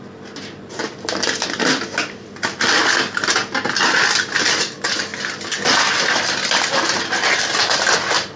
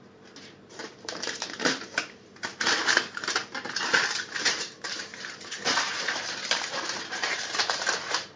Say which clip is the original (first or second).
first